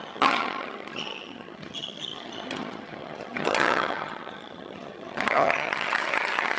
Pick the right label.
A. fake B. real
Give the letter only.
A